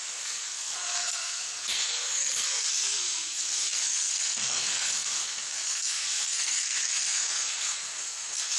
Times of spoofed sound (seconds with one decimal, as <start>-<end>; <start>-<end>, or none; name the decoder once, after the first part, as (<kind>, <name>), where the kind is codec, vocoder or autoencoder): 0.0-8.6 (codec, SNAC)